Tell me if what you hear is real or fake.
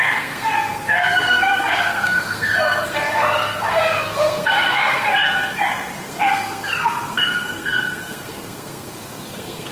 fake